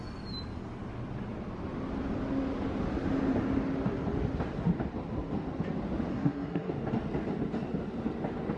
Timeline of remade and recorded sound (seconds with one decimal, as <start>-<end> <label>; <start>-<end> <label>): 0.0-6.1 recorded; 6.1-6.7 remade; 6.7-8.6 recorded

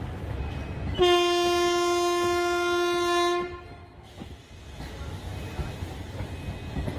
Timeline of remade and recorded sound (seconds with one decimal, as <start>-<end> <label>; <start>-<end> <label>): 0.0-3.8 recorded; 3.8-4.4 remade; 4.4-7.0 recorded

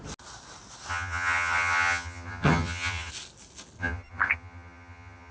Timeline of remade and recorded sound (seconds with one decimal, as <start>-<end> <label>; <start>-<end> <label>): 0.0-0.9 recorded; 0.9-3.1 remade; 3.1-3.8 recorded; 3.8-5.3 remade